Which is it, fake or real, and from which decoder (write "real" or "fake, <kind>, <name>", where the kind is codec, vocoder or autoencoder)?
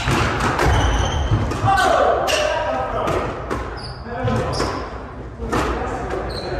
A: real